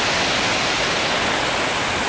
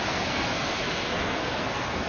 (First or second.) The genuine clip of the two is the first